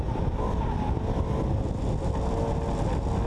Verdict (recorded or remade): recorded